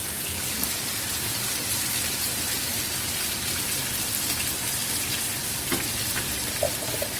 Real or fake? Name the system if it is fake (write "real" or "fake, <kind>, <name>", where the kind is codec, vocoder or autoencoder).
fake, vocoder, BigVGAN v2